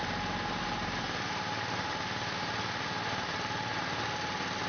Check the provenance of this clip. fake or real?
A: real